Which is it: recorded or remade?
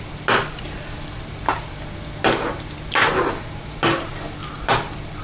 recorded